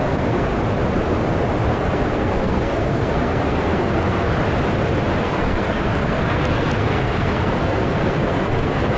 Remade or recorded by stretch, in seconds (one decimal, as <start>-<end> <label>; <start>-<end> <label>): 0.0-0.5 remade; 0.5-1.7 recorded; 1.7-4.3 remade; 4.3-5.2 recorded; 5.2-9.0 remade